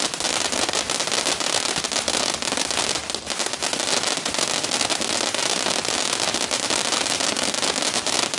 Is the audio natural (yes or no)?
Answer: yes